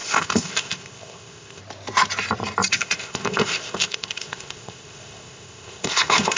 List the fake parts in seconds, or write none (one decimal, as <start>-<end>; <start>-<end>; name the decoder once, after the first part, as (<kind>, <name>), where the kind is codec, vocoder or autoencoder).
0.0-1.6 (codec, ZipCodec); 2.7-6.4